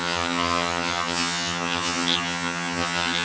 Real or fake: fake